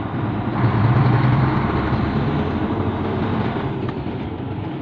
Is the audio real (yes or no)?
no